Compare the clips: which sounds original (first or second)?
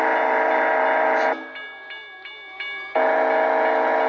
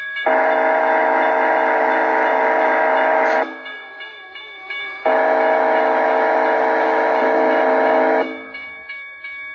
first